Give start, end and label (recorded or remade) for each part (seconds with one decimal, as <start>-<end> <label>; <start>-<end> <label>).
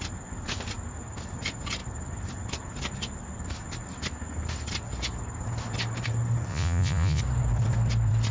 0.0-6.5 recorded; 6.5-7.2 remade; 7.2-8.3 recorded